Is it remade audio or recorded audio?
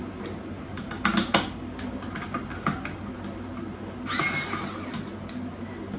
recorded